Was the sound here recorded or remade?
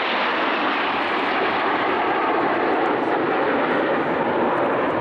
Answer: recorded